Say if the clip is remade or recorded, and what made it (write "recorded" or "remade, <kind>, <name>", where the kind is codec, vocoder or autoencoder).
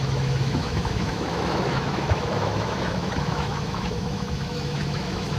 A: remade, autoencoder, DAC-VAE